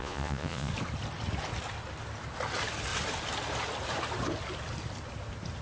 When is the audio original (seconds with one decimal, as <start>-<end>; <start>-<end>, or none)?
0.7-5.6